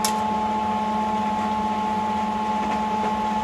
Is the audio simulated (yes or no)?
no